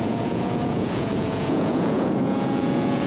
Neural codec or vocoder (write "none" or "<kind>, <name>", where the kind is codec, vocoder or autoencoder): vocoder, Vocos